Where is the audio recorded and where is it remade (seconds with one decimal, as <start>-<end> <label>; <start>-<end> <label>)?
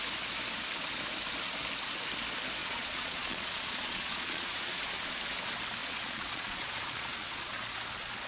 0.0-2.6 recorded; 2.6-5.1 remade; 5.1-5.8 recorded; 5.8-7.5 remade; 7.5-8.3 recorded